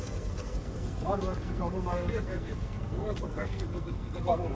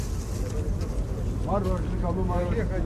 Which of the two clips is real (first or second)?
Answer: second